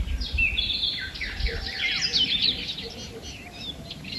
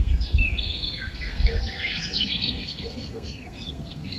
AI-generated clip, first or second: second